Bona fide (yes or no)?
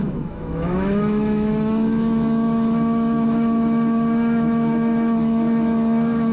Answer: no